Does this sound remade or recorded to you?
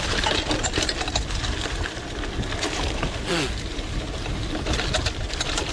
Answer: recorded